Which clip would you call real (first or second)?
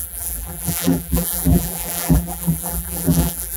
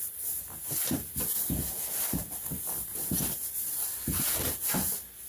second